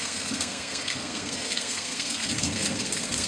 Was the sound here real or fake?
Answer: fake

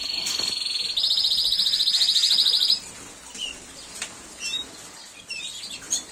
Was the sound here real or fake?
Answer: real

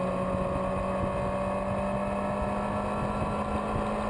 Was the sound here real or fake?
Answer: real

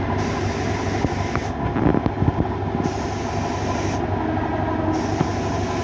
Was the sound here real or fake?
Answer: real